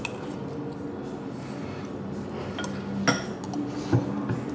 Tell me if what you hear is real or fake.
real